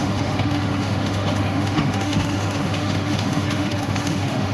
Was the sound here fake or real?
fake